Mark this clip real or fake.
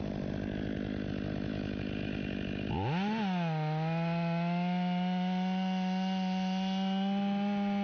real